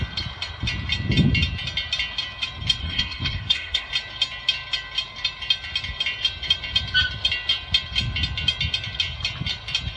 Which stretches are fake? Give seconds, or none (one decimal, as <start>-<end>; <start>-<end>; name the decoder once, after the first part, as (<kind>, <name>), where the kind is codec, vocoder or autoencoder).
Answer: 2.8-3.9 (codec, SNAC)